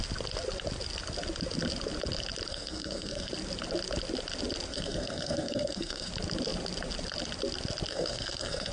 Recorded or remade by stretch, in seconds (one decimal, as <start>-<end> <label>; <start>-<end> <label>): 0.0-2.5 recorded; 2.5-3.3 remade; 3.3-4.7 recorded; 4.7-6.1 remade; 6.1-7.9 recorded; 7.9-8.7 remade